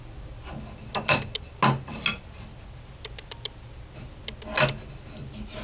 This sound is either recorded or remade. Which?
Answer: recorded